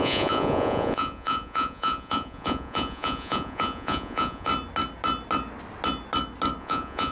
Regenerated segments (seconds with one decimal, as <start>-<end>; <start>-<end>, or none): 0.0-4.5; 6.6-7.1